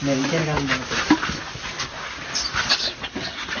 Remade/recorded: recorded